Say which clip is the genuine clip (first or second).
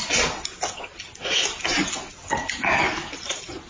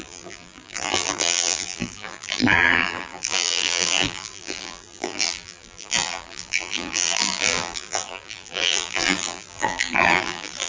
first